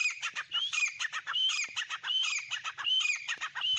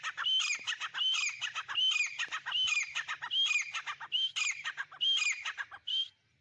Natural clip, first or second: second